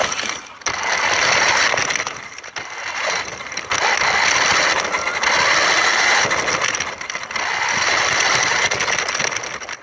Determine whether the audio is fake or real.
real